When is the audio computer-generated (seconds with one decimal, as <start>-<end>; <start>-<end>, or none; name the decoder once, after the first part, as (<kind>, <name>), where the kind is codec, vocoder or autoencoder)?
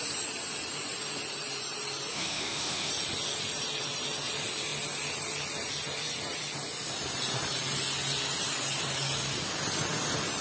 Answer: 2.1-2.9 (autoencoder, DAC-VAE)